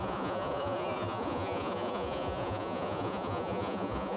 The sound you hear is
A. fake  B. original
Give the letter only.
A